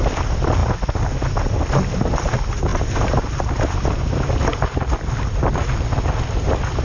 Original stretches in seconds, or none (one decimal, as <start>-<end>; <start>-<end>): 0.0-6.8